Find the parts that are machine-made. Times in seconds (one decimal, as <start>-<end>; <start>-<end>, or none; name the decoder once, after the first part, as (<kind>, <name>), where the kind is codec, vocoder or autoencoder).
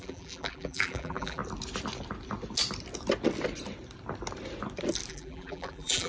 0.0-1.4 (vocoder, BigVGAN v2); 5.1-6.1